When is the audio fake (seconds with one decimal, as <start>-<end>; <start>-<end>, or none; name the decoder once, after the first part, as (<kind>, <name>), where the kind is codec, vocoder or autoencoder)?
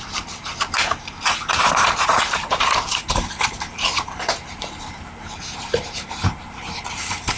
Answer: 0.0-0.5 (vocoder, BigVGAN v2); 2.1-7.4